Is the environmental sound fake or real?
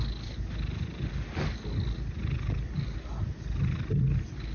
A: real